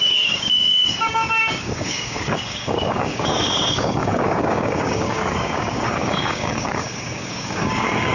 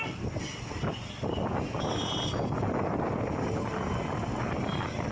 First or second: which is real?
second